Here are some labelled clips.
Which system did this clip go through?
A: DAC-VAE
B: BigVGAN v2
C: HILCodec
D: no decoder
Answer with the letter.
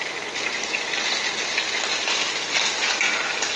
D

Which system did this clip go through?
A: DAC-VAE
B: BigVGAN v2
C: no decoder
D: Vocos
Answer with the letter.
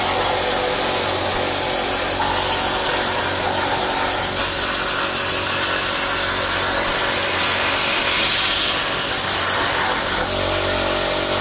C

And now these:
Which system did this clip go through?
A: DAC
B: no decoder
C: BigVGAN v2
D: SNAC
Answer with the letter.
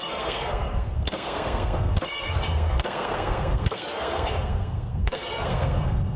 D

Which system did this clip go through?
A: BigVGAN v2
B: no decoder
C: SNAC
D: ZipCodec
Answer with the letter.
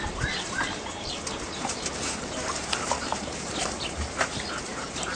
A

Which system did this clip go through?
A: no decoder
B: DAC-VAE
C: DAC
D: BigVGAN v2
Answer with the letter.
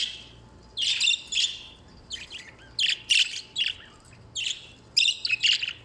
A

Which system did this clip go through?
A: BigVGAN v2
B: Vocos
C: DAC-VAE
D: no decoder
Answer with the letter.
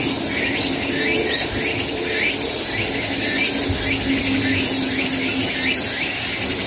D